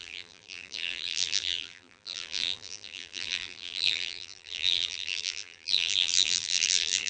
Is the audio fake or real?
fake